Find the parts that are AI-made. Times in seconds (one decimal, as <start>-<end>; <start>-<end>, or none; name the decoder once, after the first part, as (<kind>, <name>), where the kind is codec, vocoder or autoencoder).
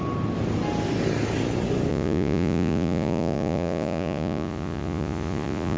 1.9-5.8 (vocoder, Vocos)